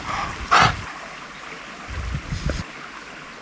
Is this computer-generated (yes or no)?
no